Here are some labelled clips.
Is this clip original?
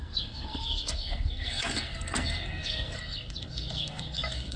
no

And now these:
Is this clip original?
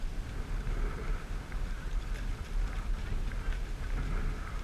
yes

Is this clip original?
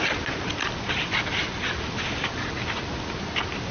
yes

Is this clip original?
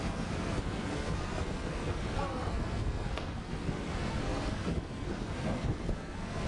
no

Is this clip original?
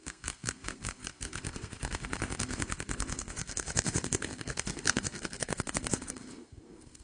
no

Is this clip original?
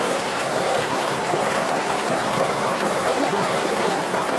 no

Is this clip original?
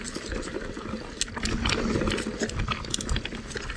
yes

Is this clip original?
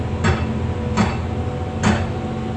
yes